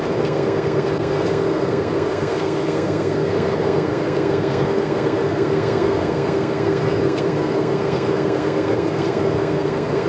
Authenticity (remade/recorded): remade